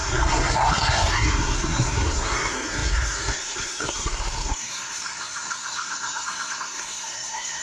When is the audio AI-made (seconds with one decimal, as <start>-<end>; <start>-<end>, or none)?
0.0-7.6